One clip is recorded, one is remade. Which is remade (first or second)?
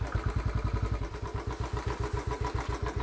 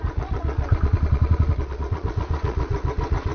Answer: second